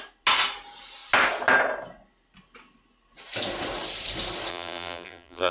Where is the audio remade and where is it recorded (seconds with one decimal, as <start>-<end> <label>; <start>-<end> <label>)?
0.0-4.5 recorded; 4.5-5.5 remade